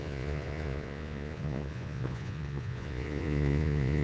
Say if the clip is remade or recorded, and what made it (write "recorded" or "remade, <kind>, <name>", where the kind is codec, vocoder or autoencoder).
remade, vocoder, Vocos